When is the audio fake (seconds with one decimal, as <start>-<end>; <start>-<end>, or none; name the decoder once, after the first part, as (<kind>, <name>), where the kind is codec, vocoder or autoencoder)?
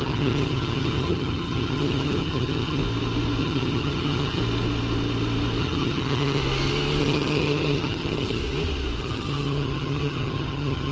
0.0-2.8 (vocoder, HiFi-GAN); 3.4-4.4; 5.6-6.4; 7.0-8.4; 9.0-10.9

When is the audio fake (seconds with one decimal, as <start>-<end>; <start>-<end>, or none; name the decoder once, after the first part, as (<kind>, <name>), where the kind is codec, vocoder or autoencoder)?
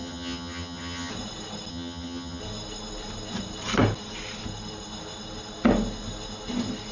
0.0-1.1 (vocoder, HiFi-GAN); 1.7-2.4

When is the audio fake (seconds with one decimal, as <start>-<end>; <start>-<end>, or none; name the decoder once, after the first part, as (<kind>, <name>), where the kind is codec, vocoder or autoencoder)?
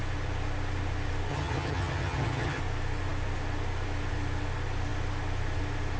1.3-2.6 (vocoder, HiFi-GAN)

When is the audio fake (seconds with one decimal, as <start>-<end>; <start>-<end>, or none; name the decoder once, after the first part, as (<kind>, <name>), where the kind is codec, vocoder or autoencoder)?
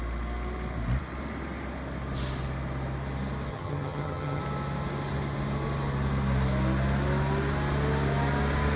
3.5-4.4 (vocoder, HiFi-GAN)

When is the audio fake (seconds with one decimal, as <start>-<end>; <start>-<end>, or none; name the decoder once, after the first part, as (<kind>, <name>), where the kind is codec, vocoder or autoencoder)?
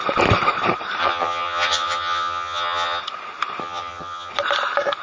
1.0-3.0 (vocoder, HiFi-GAN); 3.6-4.3